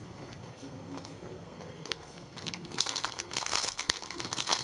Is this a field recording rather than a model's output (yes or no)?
no